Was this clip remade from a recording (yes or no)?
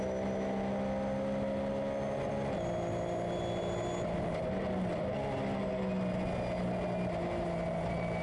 no